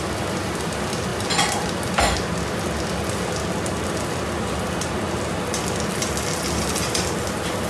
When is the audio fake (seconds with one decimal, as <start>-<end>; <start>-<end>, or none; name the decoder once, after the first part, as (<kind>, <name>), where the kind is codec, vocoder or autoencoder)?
none